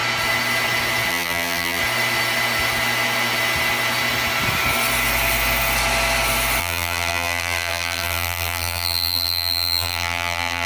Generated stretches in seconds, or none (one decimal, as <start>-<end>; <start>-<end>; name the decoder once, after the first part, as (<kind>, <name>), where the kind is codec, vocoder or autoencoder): 1.1-1.8 (vocoder, BigVGAN v2); 6.6-10.7